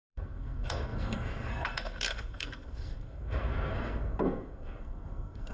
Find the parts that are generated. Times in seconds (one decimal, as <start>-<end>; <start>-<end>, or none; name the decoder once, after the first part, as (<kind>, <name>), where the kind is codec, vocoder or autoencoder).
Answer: 0.0-5.5 (codec, SNAC)

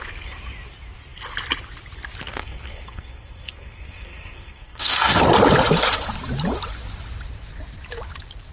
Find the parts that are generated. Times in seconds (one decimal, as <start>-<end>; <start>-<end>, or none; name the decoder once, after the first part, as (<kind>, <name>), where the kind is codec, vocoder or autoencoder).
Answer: 2.4-5.2 (codec, SNAC)

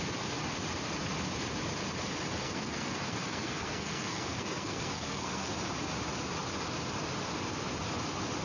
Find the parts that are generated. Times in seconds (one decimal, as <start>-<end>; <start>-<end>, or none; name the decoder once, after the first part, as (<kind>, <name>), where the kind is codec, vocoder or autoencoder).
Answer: 2.4-5.5 (codec, SNAC)

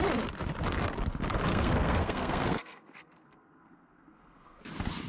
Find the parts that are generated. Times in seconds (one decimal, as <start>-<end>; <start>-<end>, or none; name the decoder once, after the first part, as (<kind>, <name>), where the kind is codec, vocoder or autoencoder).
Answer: 1.5-4.6 (codec, SNAC)

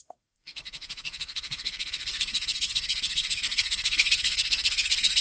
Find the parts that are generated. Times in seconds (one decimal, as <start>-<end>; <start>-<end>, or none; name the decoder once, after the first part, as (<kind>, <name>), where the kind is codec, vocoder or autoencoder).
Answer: 0.0-5.2 (codec, SNAC)

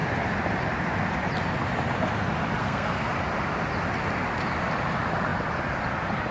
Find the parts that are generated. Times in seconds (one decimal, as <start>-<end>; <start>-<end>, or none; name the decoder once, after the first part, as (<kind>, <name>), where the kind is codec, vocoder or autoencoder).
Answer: 2.6-3.1 (codec, SNAC)

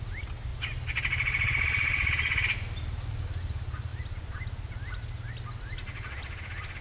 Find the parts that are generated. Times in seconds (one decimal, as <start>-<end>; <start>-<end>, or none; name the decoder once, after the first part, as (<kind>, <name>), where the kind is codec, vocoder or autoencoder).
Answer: none